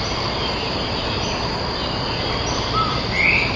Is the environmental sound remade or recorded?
recorded